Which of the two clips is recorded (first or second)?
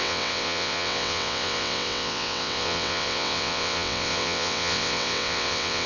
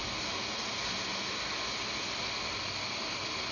second